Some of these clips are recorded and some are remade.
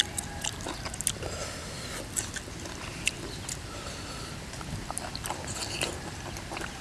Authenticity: remade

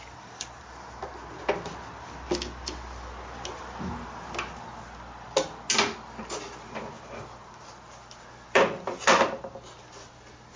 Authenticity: recorded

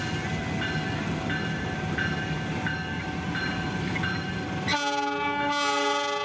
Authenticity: recorded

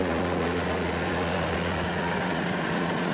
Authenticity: remade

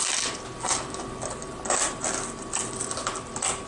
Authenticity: recorded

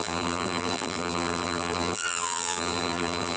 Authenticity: remade